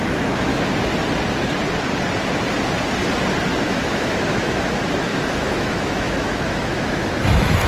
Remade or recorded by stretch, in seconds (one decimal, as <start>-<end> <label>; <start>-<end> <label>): 0.0-0.5 remade; 0.5-3.6 recorded; 3.6-7.7 remade